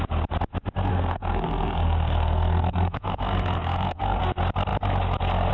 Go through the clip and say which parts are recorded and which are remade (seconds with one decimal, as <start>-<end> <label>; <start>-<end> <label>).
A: 0.0-0.9 recorded; 0.9-4.2 remade; 4.2-5.5 recorded